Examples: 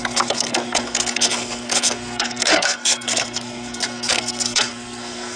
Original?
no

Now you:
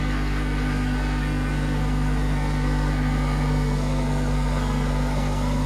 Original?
no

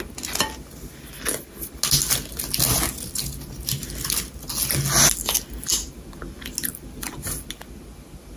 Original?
yes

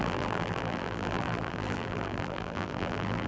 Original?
no